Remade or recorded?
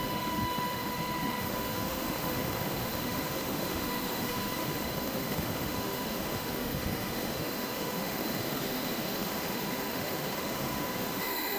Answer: remade